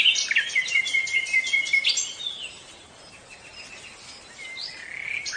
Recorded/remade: recorded